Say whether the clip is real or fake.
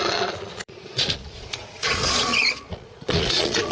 fake